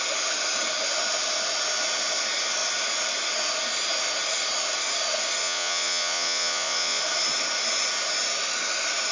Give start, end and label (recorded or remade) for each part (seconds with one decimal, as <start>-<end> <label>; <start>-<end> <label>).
0.0-5.4 recorded; 5.4-7.0 remade; 7.0-9.1 recorded